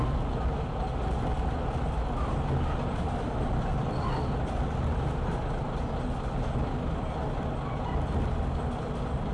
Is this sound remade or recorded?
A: recorded